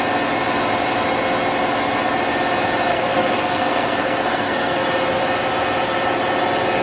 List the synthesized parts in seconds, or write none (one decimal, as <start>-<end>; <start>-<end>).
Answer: 2.9-4.8